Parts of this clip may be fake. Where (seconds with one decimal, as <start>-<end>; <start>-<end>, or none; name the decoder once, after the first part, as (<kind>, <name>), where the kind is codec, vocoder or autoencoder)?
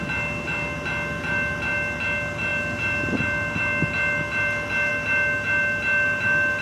none